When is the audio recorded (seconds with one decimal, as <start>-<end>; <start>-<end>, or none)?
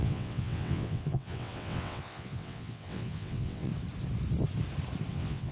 3.7-5.1